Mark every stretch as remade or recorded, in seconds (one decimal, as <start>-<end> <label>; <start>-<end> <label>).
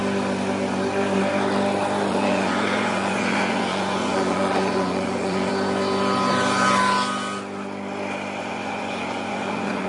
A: 0.0-2.1 recorded; 2.1-5.5 remade; 5.5-8.4 recorded; 8.4-9.9 remade